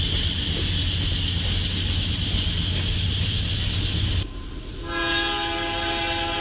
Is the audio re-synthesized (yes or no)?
no